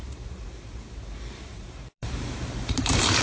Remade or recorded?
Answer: remade